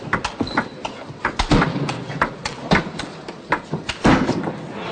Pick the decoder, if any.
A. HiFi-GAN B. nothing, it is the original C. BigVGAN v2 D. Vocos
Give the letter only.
B